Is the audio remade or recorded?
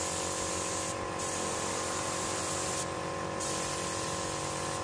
recorded